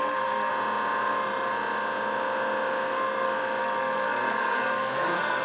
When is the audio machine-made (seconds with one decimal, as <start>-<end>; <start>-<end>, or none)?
0.0-0.5; 3.6-5.4